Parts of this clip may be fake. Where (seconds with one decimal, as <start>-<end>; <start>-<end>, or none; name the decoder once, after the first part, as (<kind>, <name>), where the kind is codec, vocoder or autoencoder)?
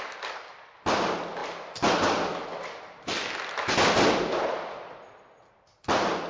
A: none